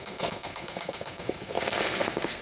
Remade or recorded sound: remade